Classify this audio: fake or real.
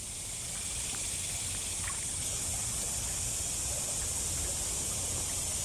real